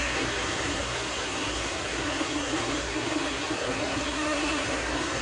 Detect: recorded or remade remade